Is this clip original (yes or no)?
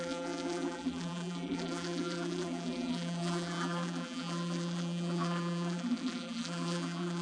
no